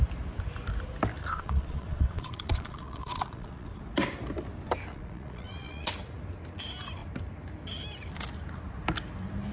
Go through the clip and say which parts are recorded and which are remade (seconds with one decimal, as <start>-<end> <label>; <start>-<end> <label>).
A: 0.0-1.3 recorded; 1.3-3.8 remade; 3.8-4.9 recorded; 4.9-5.9 remade; 5.9-9.5 recorded